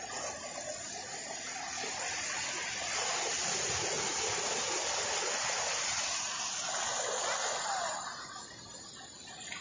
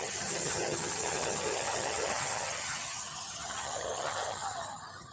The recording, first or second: first